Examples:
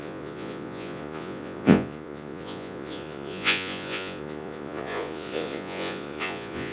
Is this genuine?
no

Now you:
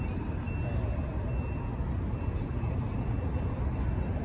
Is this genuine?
yes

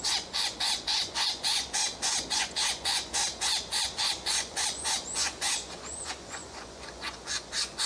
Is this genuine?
no